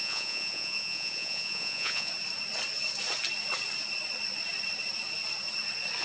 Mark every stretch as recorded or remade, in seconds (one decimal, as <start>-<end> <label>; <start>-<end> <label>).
0.0-2.1 remade; 2.1-6.0 recorded